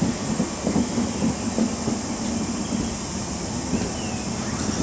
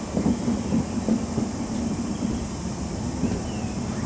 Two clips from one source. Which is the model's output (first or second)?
second